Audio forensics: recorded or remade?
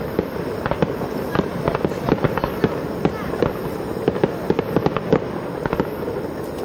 recorded